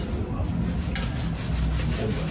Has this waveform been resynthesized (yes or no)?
no